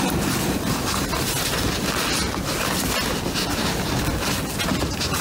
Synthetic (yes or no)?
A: no